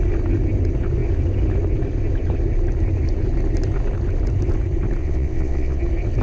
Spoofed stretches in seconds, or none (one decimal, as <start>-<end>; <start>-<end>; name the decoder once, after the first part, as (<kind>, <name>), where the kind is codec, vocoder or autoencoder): 5.0-5.8 (vocoder, WaveNeXt)